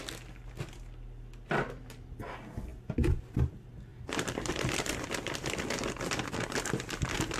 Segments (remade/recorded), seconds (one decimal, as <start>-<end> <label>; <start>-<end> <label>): 0.0-3.9 recorded; 3.9-6.3 remade; 6.3-7.4 recorded